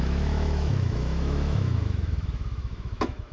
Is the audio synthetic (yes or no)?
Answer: yes